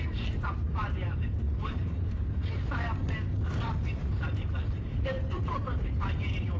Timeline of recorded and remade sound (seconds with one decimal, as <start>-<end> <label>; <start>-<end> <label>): 0.0-6.6 remade